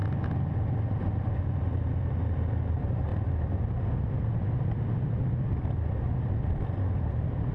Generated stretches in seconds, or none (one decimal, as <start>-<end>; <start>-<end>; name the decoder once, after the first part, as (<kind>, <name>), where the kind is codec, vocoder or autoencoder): 1.0-7.5 (vocoder, BigVGAN v2)

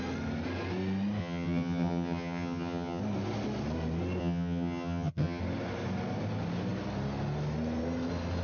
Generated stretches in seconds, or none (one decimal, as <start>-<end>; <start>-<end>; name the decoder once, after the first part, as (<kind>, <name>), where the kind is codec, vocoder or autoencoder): 1.2-3.0 (vocoder, HiFi-GAN); 4.2-5.4

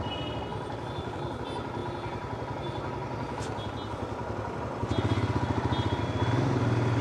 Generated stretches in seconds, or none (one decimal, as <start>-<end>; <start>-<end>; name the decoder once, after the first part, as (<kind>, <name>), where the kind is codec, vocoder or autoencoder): 0.5-1.4 (vocoder, BigVGAN v2)

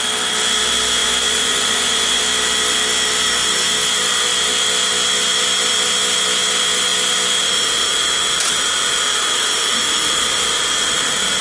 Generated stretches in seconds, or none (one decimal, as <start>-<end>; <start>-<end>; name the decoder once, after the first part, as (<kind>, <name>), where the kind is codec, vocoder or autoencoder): 1.0-2.2 (vocoder, Vocos)